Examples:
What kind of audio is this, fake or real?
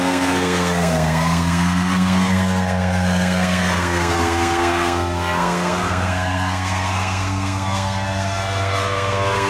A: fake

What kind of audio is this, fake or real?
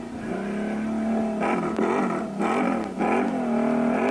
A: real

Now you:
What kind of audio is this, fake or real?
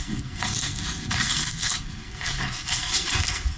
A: fake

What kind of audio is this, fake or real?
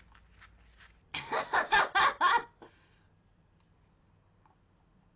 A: real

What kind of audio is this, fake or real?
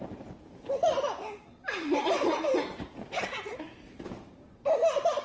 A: fake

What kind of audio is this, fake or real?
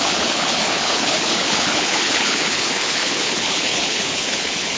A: fake